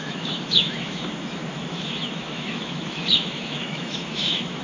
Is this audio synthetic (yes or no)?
yes